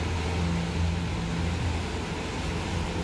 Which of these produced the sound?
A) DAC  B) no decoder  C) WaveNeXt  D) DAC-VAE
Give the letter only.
B